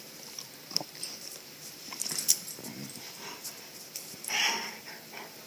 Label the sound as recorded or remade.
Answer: remade